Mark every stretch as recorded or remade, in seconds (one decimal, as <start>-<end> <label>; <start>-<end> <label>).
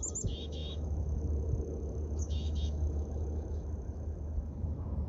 0.0-5.1 remade